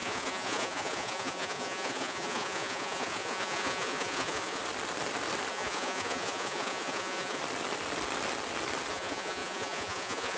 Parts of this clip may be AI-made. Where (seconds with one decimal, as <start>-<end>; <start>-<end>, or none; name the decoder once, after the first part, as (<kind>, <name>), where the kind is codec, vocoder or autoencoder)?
0.0-4.6 (vocoder, Vocos); 5.5-7.4; 8.9-10.4